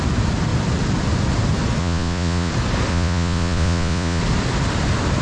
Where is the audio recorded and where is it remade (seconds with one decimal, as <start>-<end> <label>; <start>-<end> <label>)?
0.0-1.8 recorded; 1.8-2.5 remade; 2.5-2.9 recorded; 2.9-4.2 remade; 4.2-5.2 recorded